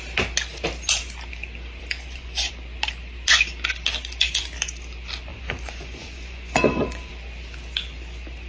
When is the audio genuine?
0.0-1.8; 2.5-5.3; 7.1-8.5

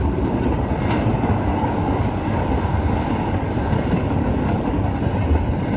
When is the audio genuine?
0.0-1.5; 5.0-5.8

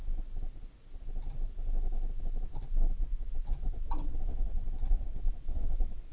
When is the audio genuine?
0.0-3.0

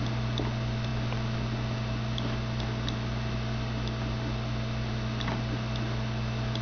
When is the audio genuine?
0.0-6.6

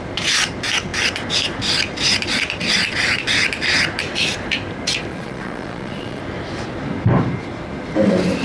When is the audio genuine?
0.0-5.1; 6.2-8.4

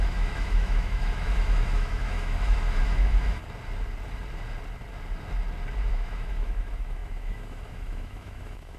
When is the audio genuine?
3.4-5.9

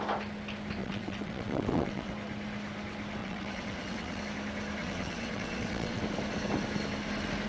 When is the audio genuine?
0.0-0.8; 2.1-3.2; 4.2-4.8; 6.0-7.5